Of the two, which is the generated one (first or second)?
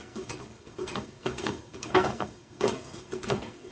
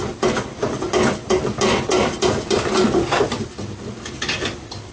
first